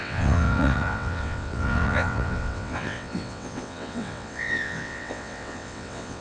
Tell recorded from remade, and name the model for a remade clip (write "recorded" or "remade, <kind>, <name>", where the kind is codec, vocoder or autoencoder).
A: remade, vocoder, WaveNeXt